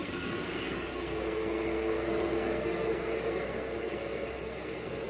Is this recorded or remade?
remade